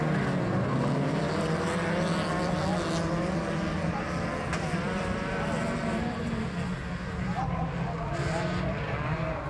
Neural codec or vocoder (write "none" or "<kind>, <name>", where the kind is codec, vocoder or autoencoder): none